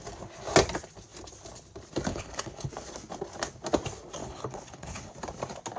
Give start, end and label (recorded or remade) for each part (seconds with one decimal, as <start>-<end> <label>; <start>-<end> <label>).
0.0-2.1 recorded; 2.1-2.7 remade; 2.7-4.2 recorded; 4.2-5.1 remade; 5.1-5.8 recorded